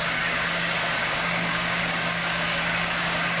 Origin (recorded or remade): remade